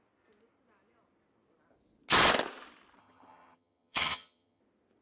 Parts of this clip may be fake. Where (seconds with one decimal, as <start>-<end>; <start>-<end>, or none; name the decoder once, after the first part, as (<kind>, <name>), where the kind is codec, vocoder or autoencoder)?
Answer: 3.0-4.6 (vocoder, HiFi-GAN)